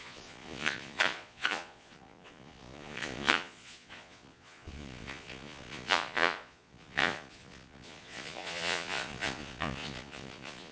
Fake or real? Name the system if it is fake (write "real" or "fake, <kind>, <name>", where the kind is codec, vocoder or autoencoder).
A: fake, vocoder, Vocos